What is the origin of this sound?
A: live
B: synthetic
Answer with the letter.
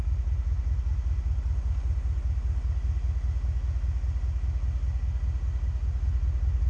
A